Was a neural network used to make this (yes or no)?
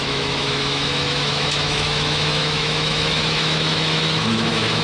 yes